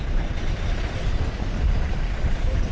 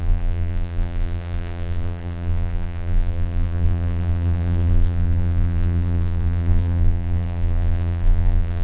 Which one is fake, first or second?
second